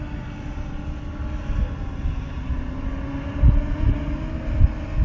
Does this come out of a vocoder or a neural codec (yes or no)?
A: no